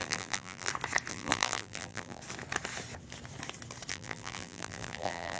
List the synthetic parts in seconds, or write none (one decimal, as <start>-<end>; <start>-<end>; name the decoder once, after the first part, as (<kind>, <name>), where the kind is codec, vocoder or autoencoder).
0.0-0.7 (vocoder, BigVGAN v2); 1.1-2.2; 3.9-5.4